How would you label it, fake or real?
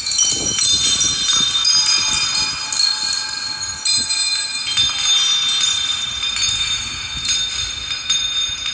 real